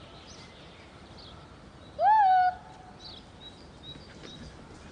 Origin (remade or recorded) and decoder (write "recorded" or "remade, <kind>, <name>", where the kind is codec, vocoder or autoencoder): recorded